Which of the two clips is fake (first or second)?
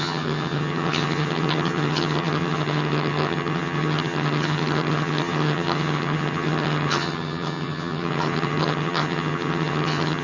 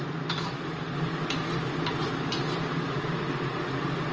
first